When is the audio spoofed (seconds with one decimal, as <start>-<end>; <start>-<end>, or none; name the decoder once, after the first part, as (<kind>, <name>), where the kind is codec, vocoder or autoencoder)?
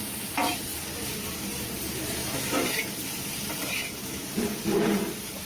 0.0-5.4 (vocoder, BigVGAN v2)